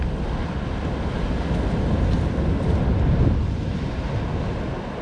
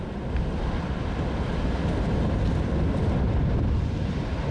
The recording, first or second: first